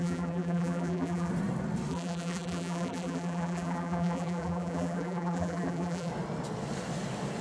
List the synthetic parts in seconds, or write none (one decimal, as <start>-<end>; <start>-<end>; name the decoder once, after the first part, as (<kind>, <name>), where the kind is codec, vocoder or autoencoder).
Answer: 0.0-1.3 (vocoder, BigVGAN v2); 1.9-6.1